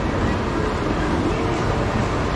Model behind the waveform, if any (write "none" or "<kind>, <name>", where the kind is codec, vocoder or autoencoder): none